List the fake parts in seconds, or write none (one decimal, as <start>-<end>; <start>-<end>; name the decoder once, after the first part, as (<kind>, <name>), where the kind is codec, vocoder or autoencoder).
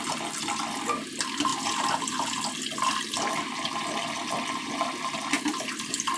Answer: none